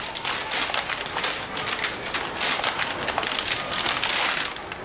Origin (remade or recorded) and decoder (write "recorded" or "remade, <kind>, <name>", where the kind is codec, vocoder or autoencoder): recorded